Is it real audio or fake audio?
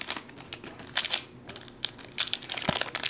real